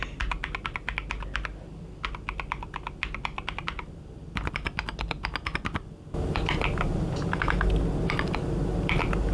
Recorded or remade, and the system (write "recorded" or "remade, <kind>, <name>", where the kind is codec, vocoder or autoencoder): recorded